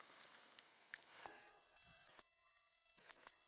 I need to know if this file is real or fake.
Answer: fake